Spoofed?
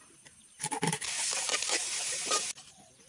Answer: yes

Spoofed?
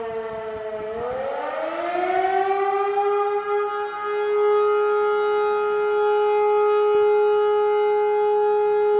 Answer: no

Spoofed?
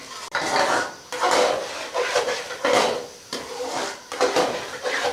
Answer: no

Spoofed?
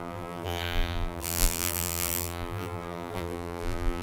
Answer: yes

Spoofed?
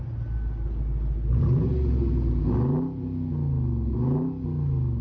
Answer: no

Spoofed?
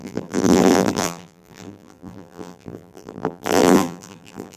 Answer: yes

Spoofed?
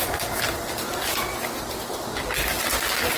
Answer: no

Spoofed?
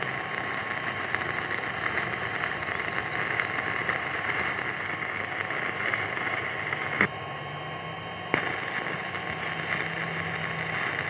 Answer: no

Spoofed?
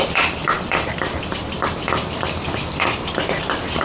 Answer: yes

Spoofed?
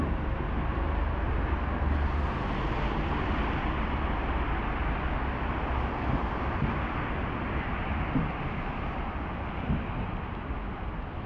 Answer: no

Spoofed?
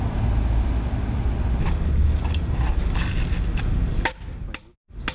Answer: no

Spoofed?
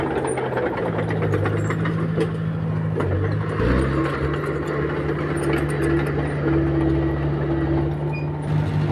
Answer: no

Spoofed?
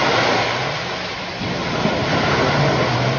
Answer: no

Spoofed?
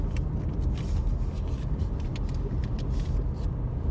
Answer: no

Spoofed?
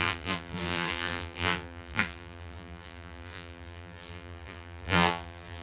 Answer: yes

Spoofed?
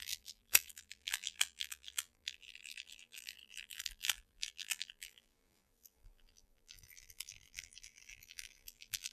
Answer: yes